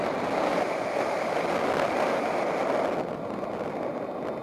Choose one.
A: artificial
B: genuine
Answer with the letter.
B